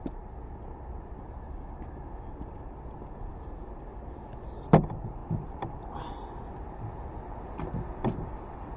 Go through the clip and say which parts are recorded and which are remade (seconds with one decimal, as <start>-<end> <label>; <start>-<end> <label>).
0.0-8.8 recorded